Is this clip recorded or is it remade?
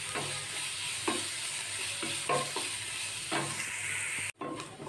recorded